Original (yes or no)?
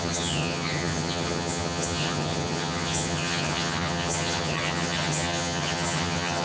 no